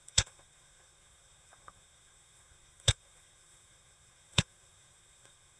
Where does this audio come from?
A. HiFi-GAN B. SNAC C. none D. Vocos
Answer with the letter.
B